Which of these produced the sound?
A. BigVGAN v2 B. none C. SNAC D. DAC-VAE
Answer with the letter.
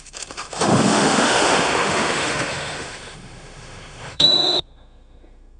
D